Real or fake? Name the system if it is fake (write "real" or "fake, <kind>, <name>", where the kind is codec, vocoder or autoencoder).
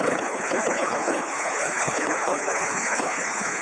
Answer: fake, codec, HILCodec